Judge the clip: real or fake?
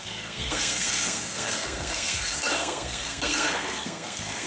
fake